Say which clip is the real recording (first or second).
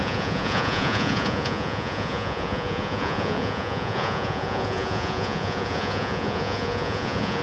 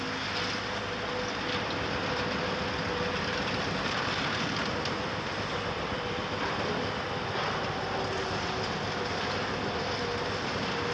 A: second